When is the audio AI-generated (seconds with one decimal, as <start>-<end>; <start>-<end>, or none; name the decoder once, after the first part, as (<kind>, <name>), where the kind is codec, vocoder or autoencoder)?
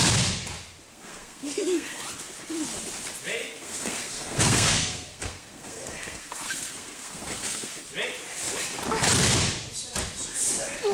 0.9-2.0 (codec, SNAC); 3.4-7.9